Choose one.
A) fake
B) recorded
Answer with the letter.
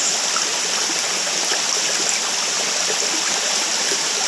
B